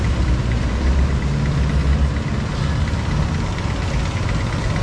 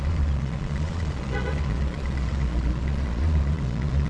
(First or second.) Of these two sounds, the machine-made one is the second